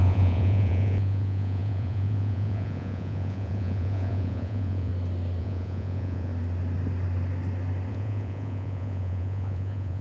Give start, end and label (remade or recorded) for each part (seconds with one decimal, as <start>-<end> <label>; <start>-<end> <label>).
0.0-4.9 remade; 4.9-5.4 recorded; 5.4-6.3 remade; 6.3-7.9 recorded; 7.9-10.0 remade